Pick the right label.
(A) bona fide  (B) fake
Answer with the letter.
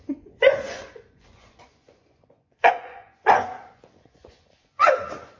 B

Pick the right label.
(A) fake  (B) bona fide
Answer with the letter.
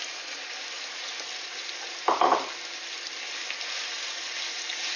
B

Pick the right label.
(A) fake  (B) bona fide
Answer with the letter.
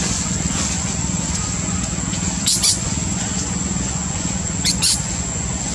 A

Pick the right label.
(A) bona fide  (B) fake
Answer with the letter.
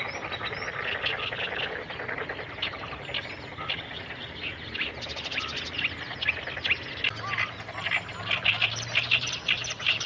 A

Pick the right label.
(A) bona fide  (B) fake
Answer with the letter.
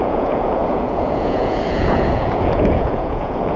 B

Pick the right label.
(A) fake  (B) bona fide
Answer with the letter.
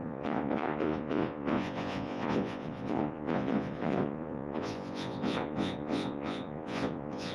A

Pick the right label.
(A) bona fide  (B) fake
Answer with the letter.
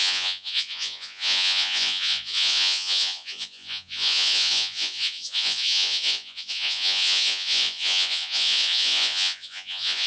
B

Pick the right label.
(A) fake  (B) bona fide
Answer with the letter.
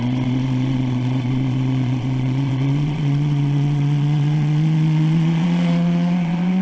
A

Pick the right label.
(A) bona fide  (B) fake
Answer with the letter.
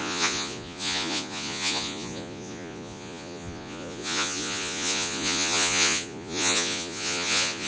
B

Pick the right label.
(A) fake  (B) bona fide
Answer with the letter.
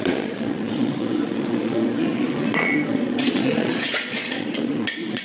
A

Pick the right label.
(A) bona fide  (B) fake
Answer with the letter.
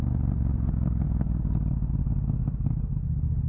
A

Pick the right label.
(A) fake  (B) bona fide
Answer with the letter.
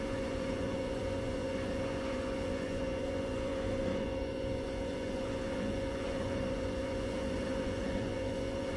A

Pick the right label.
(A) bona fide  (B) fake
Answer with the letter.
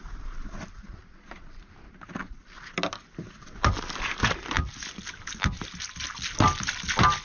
A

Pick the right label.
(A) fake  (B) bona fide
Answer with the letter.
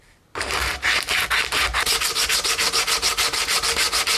B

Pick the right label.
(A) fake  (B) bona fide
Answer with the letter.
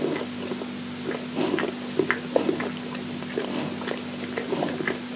B